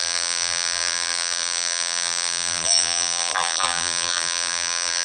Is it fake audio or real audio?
fake